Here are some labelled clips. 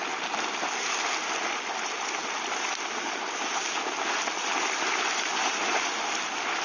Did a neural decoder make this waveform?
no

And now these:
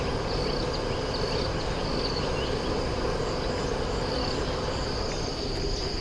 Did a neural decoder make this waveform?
no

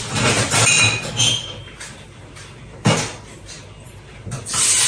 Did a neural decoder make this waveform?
no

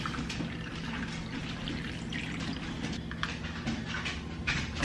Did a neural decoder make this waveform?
no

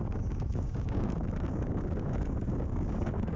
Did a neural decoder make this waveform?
yes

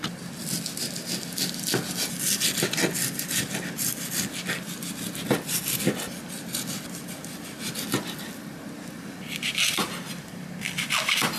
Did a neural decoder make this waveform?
no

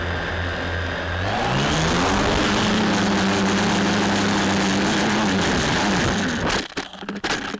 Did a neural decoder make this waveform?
no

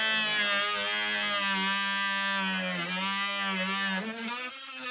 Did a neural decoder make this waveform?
no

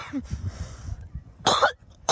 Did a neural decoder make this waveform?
yes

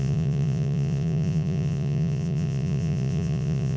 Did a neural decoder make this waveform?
yes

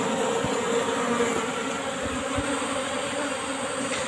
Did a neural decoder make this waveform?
no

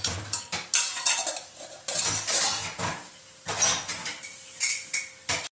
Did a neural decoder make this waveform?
no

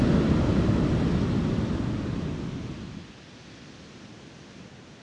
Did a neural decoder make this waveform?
no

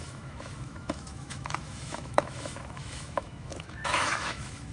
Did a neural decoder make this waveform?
yes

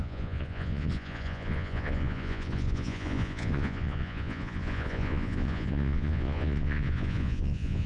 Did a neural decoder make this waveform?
yes